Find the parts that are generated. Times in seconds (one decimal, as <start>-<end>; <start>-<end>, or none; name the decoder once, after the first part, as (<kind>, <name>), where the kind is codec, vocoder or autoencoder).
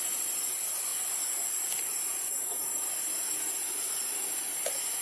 none